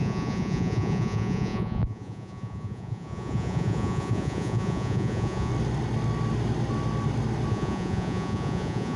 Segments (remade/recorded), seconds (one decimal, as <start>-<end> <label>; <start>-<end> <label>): 0.0-5.5 remade; 5.5-7.5 recorded; 7.5-9.0 remade